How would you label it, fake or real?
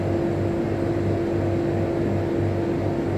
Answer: real